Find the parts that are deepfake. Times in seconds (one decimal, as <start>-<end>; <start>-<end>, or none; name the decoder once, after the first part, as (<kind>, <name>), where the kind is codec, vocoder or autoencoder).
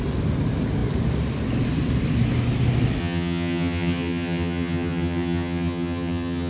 3.0-6.5 (vocoder, HiFi-GAN)